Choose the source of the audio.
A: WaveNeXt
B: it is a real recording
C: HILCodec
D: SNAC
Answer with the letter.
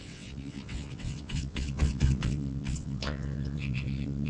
A